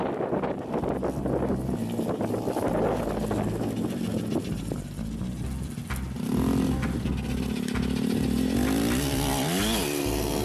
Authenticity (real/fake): real